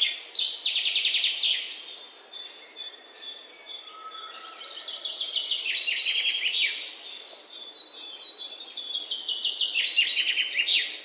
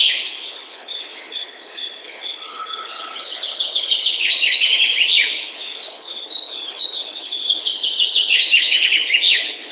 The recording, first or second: first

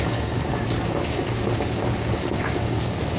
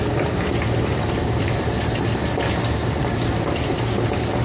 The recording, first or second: second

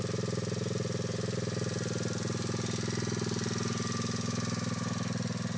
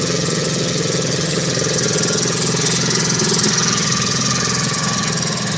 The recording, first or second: first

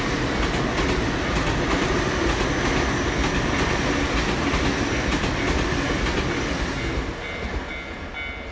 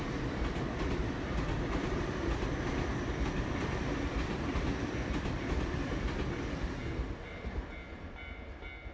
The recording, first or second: first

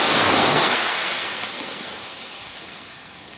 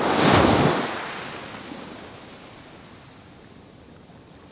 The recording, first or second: second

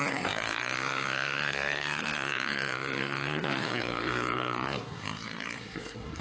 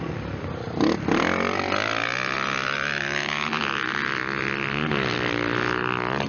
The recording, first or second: second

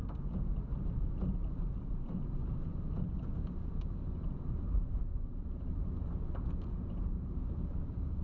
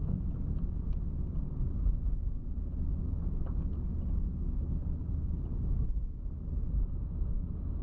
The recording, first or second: second